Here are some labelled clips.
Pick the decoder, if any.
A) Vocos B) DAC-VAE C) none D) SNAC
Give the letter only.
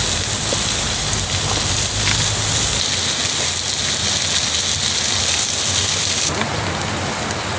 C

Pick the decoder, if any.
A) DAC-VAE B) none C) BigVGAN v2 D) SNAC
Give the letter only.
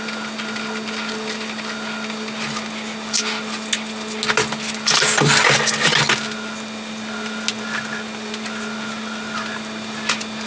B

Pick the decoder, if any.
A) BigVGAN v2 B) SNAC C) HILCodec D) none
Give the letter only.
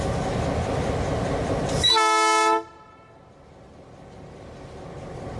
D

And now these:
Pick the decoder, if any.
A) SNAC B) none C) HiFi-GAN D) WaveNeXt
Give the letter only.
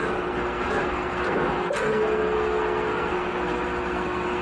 A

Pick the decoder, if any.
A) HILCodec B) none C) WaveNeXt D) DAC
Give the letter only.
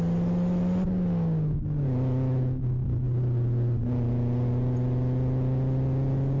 B